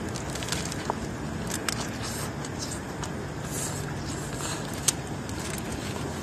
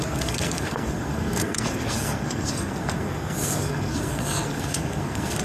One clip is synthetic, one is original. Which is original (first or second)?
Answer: first